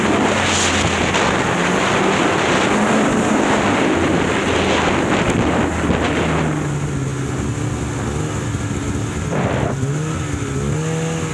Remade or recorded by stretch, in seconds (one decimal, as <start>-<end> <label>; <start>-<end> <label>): 0.0-11.3 recorded